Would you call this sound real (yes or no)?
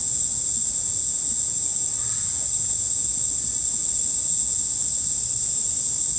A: yes